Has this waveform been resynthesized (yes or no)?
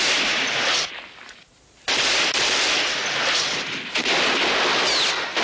no